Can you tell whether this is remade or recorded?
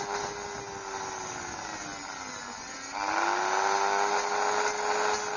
recorded